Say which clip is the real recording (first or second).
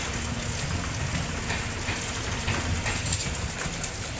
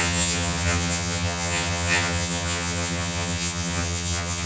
first